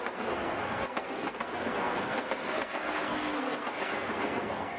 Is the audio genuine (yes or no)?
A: no